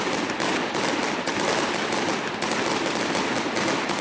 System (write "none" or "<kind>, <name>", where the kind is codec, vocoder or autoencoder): none